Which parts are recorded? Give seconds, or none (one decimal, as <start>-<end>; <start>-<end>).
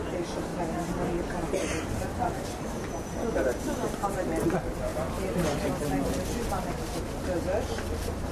0.0-0.5; 1.3-8.3